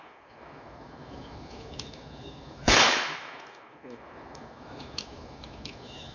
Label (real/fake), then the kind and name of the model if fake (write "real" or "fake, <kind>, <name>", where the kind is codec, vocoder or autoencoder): fake, autoencoder, DAC-VAE